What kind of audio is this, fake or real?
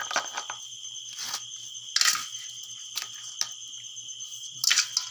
real